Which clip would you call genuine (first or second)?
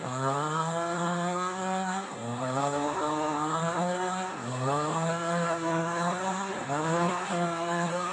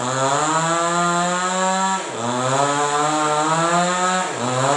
second